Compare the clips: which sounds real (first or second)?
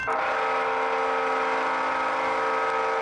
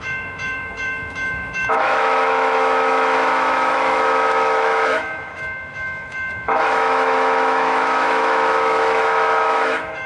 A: first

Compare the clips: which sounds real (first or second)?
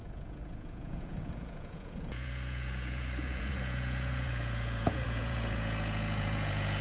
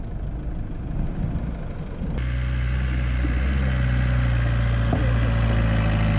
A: second